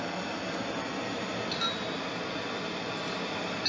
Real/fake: real